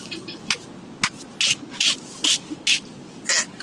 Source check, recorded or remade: recorded